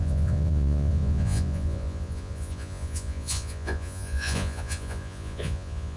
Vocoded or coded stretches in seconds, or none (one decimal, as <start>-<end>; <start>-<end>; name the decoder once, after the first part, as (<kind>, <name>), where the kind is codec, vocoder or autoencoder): 0.0-6.0 (vocoder, Vocos)